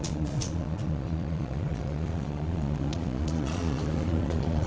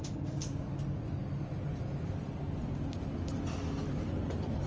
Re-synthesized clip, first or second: first